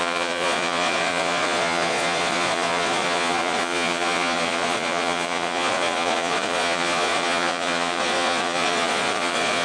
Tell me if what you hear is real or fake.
fake